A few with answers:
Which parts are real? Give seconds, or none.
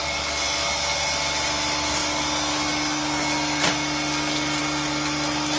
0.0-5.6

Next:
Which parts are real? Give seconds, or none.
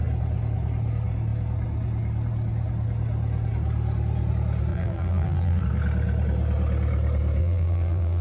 0.0-4.7; 5.6-7.4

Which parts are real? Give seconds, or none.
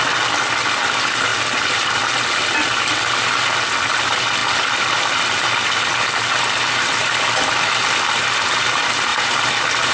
0.0-4.4; 7.5-9.1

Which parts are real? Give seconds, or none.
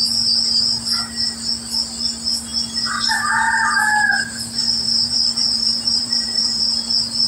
0.0-4.6; 6.6-7.3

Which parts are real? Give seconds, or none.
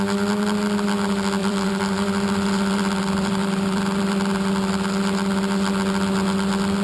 0.0-1.4; 4.5-6.8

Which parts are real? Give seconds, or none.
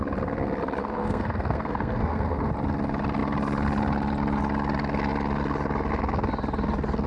0.0-0.8; 2.5-7.1